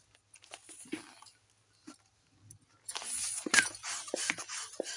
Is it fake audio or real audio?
real